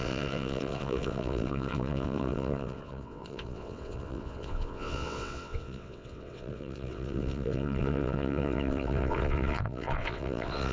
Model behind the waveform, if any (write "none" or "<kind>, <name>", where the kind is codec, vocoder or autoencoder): vocoder, WaveNeXt